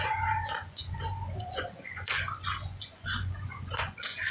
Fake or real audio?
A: fake